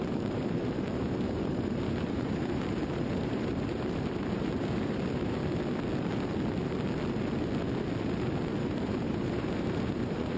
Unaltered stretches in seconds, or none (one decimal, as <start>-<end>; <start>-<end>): 5.4-8.6